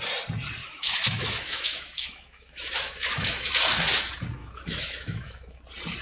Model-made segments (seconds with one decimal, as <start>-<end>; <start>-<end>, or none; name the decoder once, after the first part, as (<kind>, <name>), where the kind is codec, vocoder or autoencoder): 0.6-3.5 (autoencoder, DAC-VAE); 4.4-5.6

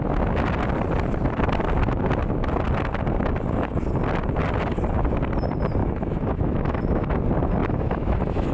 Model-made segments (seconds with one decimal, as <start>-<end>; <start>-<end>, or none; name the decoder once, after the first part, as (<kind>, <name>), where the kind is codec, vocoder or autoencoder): 5.8-7.1 (autoencoder, DAC-VAE); 7.6-8.5

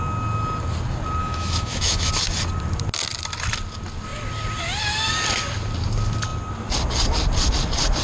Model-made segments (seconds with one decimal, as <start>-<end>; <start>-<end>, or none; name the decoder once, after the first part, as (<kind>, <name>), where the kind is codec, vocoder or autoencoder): 1.2-2.1 (autoencoder, DAC-VAE)

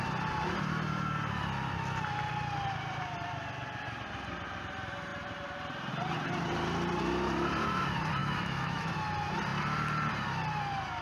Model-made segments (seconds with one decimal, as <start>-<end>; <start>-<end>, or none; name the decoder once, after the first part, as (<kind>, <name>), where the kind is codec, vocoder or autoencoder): 8.2-8.9 (autoencoder, DAC-VAE)